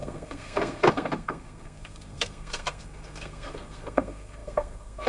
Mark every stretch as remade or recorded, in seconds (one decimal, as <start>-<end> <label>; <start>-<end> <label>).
0.0-5.1 remade